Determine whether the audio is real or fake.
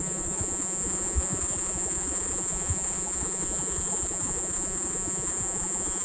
fake